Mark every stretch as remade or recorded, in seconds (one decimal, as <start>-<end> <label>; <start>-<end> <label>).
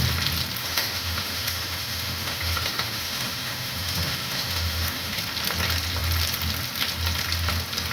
0.0-0.6 recorded; 0.6-5.2 remade; 5.2-7.9 recorded